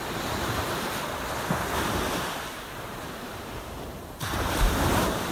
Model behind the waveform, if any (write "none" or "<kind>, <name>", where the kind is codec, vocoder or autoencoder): vocoder, BigVGAN v2